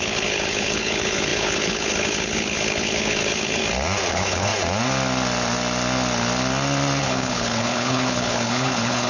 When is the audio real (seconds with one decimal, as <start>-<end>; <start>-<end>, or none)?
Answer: 3.6-4.1; 4.5-7.0